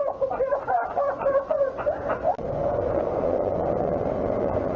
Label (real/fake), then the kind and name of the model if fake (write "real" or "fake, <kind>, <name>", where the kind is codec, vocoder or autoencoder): fake, vocoder, Vocos